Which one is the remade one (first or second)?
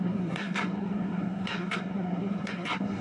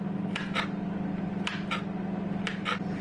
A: first